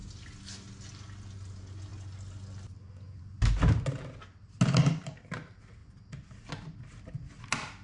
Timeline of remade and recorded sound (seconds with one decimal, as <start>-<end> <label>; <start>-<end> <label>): 0.0-7.8 recorded